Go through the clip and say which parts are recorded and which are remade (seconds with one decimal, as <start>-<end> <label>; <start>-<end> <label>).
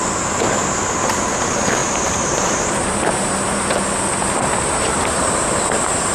0.0-1.8 recorded; 1.8-3.7 remade; 3.7-4.4 recorded; 4.4-5.2 remade; 5.2-6.1 recorded